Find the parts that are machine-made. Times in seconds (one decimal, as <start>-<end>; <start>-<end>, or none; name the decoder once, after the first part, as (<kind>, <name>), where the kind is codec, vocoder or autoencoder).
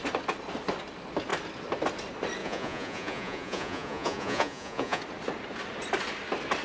2.4-5.0 (vocoder, Vocos)